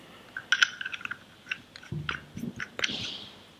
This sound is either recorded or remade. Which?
recorded